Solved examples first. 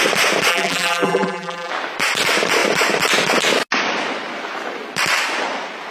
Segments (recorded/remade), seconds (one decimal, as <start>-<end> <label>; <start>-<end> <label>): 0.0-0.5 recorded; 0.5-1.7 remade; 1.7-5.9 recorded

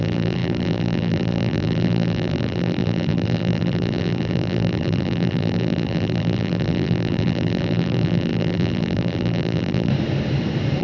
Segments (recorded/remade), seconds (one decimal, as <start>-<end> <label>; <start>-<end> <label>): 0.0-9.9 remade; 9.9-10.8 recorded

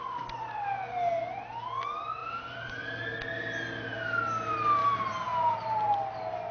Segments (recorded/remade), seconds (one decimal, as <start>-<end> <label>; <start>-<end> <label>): 0.0-2.2 recorded; 2.2-2.7 remade; 2.7-4.8 recorded; 4.8-5.9 remade; 5.9-6.5 recorded